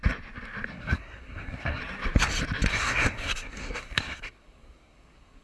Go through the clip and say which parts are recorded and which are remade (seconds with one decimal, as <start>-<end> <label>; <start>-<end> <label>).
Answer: 0.0-0.7 recorded; 0.7-1.8 remade; 1.8-2.7 recorded; 2.7-5.4 remade